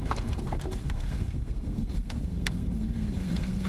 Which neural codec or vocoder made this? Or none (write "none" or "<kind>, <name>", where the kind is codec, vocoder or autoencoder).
codec, SNAC